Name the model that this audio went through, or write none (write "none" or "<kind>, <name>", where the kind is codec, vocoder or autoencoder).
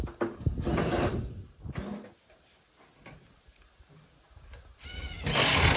none